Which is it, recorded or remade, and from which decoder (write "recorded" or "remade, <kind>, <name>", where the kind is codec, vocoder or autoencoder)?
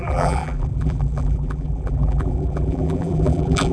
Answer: remade, vocoder, BigVGAN v2